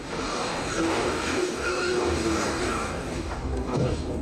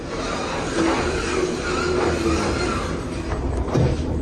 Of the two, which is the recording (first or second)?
second